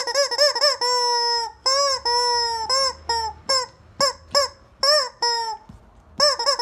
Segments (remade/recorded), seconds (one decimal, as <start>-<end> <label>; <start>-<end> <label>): 0.0-6.6 recorded